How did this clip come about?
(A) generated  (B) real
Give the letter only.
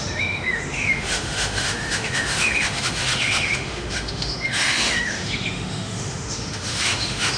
A